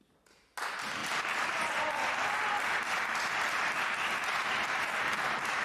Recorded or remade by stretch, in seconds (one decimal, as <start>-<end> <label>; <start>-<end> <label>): 0.0-1.0 recorded; 1.0-1.6 remade; 1.6-4.4 recorded; 4.4-5.6 remade